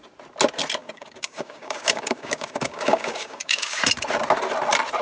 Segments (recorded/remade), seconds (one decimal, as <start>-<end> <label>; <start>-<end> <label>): 0.0-0.8 recorded; 0.8-3.8 remade; 3.8-5.0 recorded